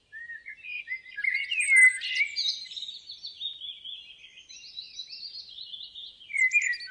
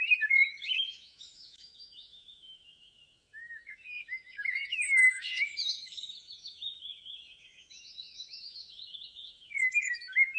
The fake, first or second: second